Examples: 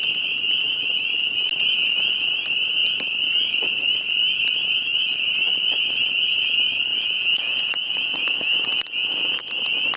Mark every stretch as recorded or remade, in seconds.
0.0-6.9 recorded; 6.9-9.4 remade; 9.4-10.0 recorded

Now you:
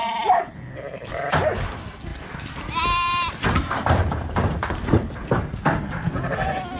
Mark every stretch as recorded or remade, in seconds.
0.0-0.5 remade; 0.5-3.8 recorded; 3.8-5.1 remade; 5.1-6.8 recorded